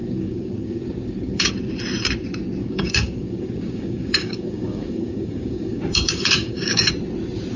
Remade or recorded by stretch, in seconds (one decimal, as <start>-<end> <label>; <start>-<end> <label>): 0.0-1.5 remade; 1.5-2.6 recorded; 2.6-6.9 remade; 6.9-7.6 recorded